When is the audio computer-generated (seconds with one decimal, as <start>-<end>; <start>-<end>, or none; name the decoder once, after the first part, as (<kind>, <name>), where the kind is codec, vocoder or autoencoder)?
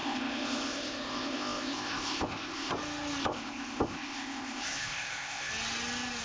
0.0-2.7 (codec, ZipCodec); 3.2-5.5